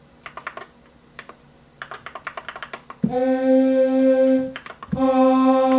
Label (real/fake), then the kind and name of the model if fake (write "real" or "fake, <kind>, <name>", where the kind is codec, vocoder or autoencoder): real